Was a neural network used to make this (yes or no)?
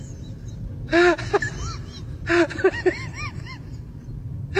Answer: no